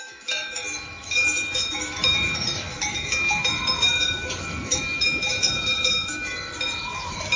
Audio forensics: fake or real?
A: fake